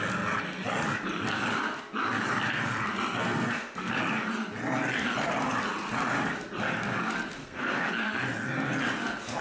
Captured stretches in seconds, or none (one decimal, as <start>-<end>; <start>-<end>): 0.0-3.2; 3.9-7.4; 7.9-9.4